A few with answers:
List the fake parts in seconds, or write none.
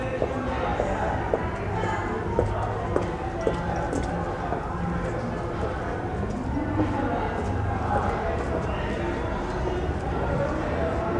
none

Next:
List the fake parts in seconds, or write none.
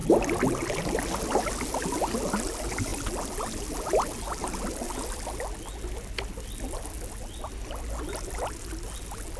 none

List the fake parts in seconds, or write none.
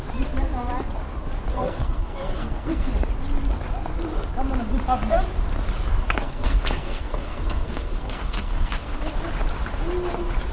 1.5-2.9 (codec, SNAC); 6.0-9.0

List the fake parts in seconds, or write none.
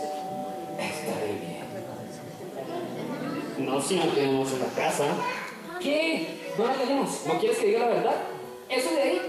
4.0-6.9 (codec, SNAC)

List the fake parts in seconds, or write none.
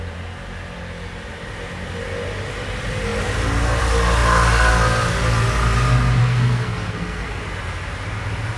6.2-7.4 (codec, SNAC)